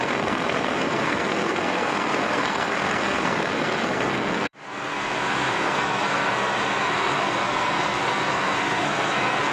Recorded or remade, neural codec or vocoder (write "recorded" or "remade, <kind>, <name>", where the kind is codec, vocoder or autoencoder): remade, codec, SNAC